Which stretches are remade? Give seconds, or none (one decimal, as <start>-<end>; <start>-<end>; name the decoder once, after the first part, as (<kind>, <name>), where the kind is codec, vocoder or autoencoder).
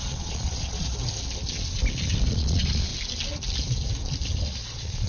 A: 0.0-0.9 (vocoder, Vocos); 2.3-2.9; 4.5-5.1